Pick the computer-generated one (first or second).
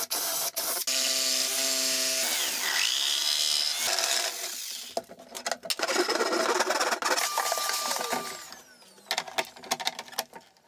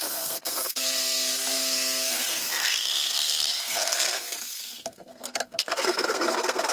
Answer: second